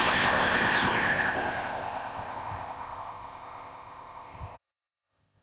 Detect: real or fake fake